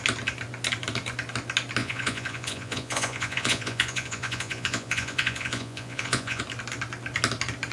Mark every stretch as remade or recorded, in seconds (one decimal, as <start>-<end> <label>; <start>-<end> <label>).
0.0-1.8 recorded; 1.8-6.4 remade; 6.4-7.7 recorded

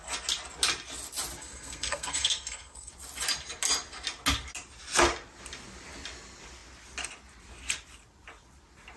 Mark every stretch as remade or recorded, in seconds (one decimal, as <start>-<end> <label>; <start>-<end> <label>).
0.0-1.4 recorded; 1.4-2.9 remade; 2.9-9.0 recorded

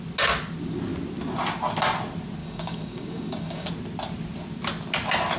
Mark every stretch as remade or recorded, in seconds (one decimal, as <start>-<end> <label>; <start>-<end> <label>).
0.0-2.4 recorded; 2.4-3.7 remade; 3.7-5.4 recorded